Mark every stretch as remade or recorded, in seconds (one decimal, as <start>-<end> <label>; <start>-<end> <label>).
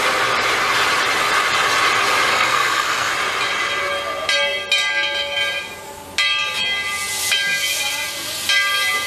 0.0-2.3 recorded; 2.3-3.1 remade; 3.1-9.1 recorded